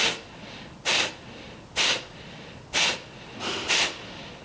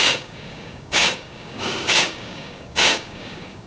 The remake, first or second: second